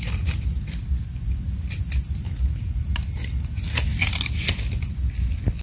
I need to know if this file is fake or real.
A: real